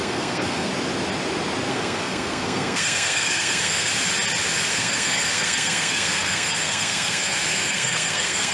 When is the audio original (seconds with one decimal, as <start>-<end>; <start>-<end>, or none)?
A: 0.7-1.7; 3.9-4.7